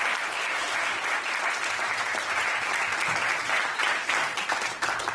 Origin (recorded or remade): recorded